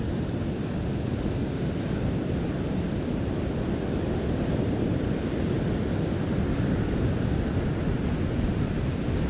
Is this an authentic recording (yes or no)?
yes